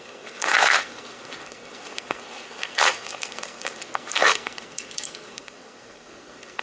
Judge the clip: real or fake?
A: fake